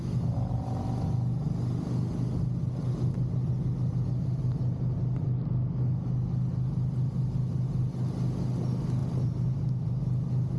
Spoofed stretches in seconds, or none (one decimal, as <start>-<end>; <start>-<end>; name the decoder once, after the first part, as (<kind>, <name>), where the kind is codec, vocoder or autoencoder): 9.0-9.9 (vocoder, BigVGAN v2)